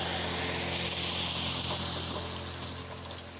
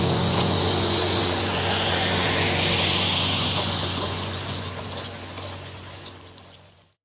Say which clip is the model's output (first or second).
second